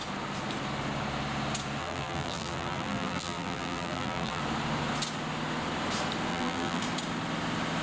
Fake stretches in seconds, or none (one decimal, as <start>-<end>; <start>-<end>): 1.8-4.4; 6.3-6.8